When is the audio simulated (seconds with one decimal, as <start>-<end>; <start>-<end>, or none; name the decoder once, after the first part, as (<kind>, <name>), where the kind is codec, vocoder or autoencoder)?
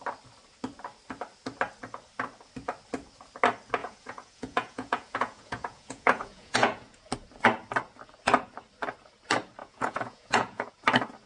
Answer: 3.8-7.1 (vocoder, Vocos); 9.6-10.7